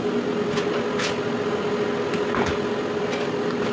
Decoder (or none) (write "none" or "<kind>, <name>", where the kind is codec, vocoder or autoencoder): none